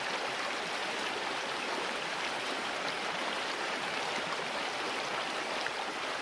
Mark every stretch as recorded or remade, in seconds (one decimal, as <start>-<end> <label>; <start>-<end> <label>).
0.0-0.8 recorded; 0.8-3.9 remade; 3.9-6.2 recorded